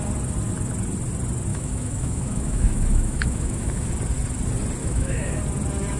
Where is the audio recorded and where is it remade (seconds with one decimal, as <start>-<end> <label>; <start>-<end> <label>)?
0.0-1.5 recorded; 1.5-3.9 remade; 3.9-4.8 recorded; 4.8-5.4 remade; 5.4-6.0 recorded